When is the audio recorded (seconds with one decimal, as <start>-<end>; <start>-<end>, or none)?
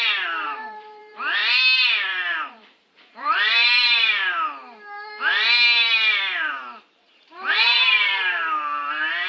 1.4-1.9; 4.2-7.0